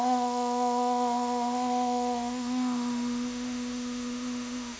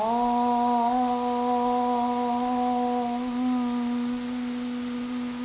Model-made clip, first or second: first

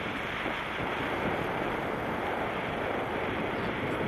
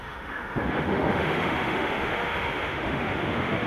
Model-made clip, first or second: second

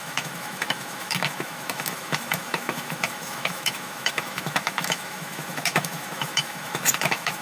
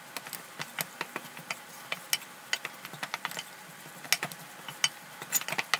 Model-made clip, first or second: first